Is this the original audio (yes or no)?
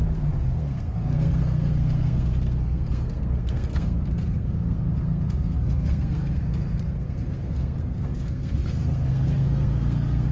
no